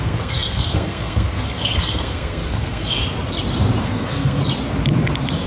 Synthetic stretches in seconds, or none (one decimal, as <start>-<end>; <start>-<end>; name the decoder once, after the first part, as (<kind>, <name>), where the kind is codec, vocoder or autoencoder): 0.0-3.0 (codec, SNAC); 3.8-4.4